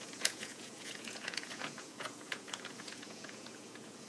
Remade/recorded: remade